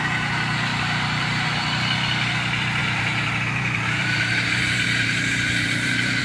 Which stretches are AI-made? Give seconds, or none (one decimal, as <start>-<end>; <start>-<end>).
0.7-1.7; 2.8-6.2